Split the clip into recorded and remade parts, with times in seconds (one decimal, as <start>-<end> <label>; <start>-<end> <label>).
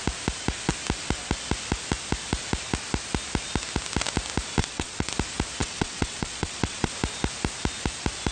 0.0-4.6 recorded; 4.6-5.1 remade; 5.1-5.6 recorded; 5.6-6.9 remade; 6.9-8.3 recorded